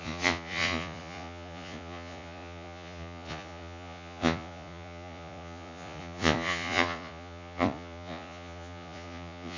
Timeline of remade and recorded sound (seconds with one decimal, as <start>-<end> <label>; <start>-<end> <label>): 0.0-9.6 remade